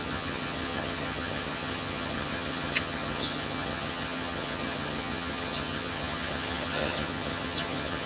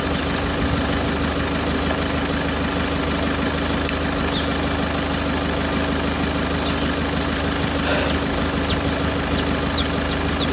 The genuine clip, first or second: second